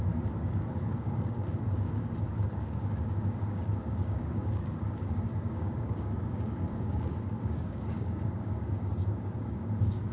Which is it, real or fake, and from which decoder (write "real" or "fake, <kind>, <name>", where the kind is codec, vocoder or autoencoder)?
fake, codec, DAC